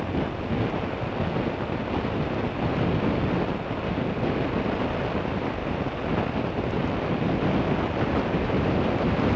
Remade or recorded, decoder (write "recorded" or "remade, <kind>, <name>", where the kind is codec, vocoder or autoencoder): recorded